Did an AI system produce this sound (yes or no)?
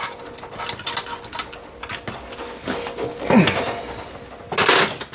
no